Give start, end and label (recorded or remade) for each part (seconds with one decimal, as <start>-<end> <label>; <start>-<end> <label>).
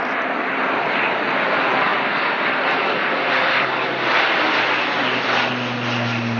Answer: 0.0-6.4 recorded